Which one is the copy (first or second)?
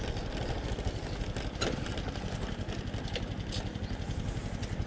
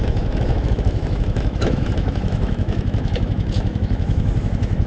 second